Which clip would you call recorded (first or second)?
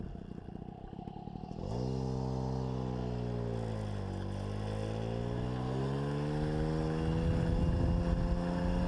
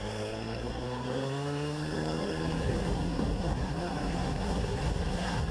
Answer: first